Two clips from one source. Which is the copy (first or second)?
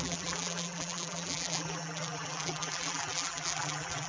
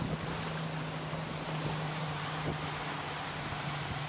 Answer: first